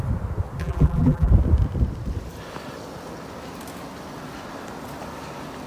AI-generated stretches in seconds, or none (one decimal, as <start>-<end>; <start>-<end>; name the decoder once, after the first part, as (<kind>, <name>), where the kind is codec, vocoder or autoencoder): 0.6-1.3 (vocoder, BigVGAN v2)